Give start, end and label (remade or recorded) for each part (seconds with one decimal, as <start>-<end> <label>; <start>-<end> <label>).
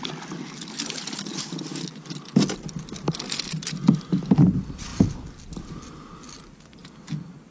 0.0-7.5 recorded